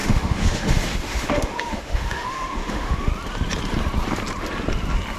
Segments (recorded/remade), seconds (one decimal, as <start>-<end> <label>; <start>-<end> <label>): 0.0-3.1 remade; 3.1-5.2 recorded

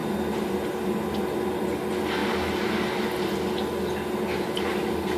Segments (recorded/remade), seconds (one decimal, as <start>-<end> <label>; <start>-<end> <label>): 0.0-5.2 recorded

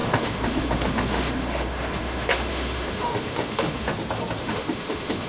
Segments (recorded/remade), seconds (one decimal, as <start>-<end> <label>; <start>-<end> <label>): 0.0-3.9 remade; 3.9-4.4 recorded; 4.4-5.3 remade

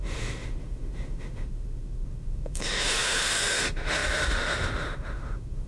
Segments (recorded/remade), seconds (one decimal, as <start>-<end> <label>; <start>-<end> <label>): 0.0-5.7 remade

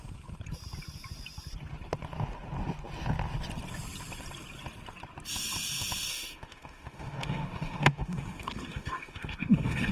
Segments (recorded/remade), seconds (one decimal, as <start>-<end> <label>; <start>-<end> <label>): 0.0-6.1 recorded; 6.1-9.9 remade

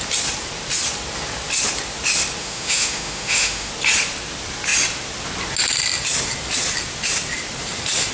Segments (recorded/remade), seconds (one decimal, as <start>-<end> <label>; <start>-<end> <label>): 0.0-2.4 recorded; 2.4-3.7 remade; 3.7-8.1 recorded

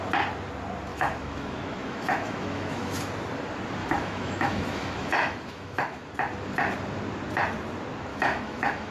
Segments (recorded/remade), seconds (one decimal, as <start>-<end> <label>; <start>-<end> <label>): 0.0-0.9 recorded; 0.9-3.1 remade; 3.1-3.8 recorded; 3.8-6.1 remade; 6.1-8.1 recorded; 8.1-8.9 remade

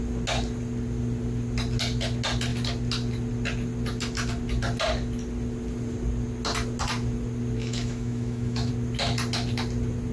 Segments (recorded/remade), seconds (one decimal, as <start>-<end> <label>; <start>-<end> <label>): 0.0-7.6 recorded; 7.6-8.7 remade; 8.7-10.1 recorded